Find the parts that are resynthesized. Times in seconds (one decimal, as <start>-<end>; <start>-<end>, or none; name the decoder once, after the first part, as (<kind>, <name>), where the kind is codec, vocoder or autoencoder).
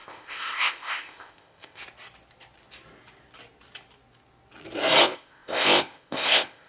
0.0-1.8 (codec, ZipCodec); 5.0-6.7